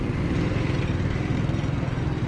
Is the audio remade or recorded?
recorded